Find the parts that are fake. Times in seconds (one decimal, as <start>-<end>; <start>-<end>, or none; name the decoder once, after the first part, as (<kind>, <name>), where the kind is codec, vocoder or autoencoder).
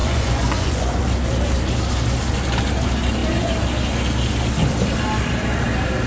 0.0-1.0 (vocoder, Vocos)